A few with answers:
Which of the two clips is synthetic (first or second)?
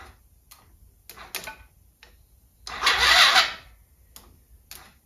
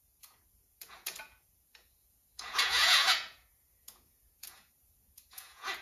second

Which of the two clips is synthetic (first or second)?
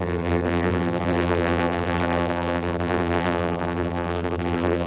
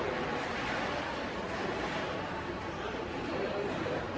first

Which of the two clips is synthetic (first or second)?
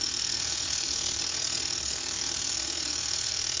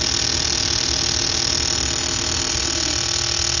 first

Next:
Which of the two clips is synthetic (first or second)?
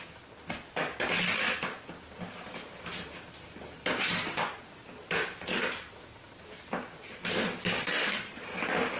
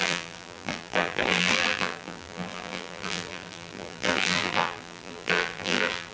second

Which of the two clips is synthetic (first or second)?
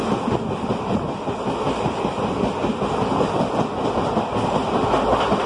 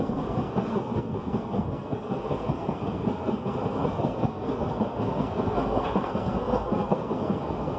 second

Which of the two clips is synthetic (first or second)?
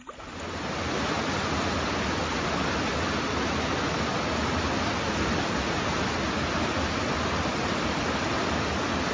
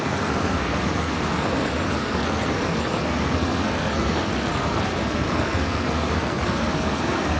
second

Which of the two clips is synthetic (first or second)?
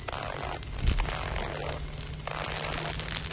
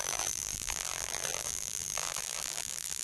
second